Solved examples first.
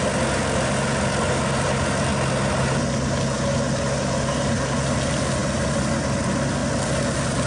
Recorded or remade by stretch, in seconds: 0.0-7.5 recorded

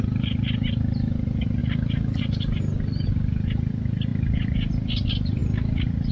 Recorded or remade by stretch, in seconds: 0.0-6.1 recorded

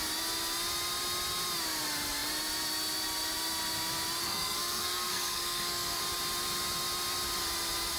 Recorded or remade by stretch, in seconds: 0.0-4.2 recorded; 4.2-6.0 remade; 6.0-8.0 recorded

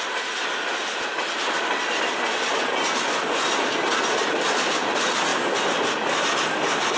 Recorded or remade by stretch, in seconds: 0.0-7.0 recorded

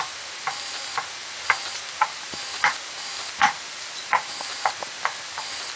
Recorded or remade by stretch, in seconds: 0.0-5.8 recorded

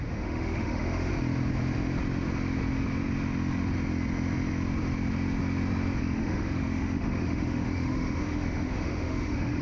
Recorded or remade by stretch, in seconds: 0.0-1.1 remade; 1.1-6.0 recorded; 6.0-9.6 remade